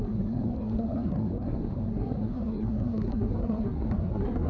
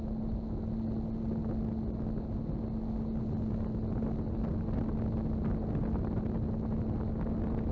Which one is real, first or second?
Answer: second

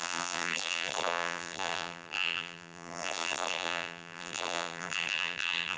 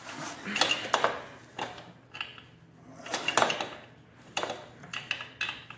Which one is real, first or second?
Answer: second